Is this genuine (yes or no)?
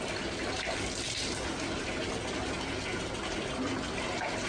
yes